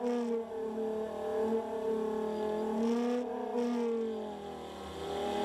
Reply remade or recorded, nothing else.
recorded